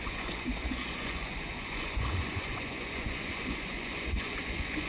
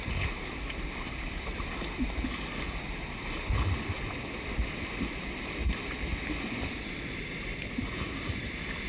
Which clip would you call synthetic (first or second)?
first